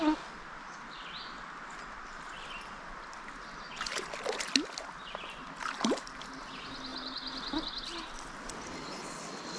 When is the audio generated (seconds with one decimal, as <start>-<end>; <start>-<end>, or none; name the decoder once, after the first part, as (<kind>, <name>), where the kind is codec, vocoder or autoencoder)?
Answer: none